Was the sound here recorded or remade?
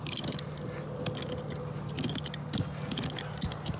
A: recorded